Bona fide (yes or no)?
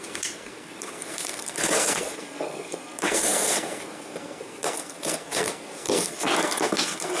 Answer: no